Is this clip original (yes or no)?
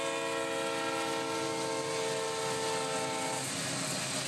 yes